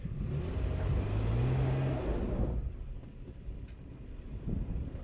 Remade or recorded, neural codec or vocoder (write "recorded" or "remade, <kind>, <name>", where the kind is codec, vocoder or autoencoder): recorded